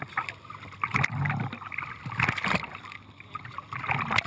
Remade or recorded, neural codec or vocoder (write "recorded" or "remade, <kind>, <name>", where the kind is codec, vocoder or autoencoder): recorded